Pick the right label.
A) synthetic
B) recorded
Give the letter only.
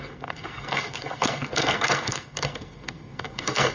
A